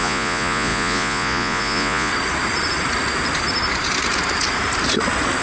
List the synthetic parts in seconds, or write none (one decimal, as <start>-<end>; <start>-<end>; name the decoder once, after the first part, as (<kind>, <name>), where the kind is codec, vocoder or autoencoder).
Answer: 0.0-2.1 (vocoder, Vocos)